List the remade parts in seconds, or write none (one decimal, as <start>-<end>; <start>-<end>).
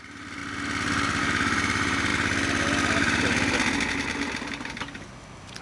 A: 0.0-0.4; 1.2-2.1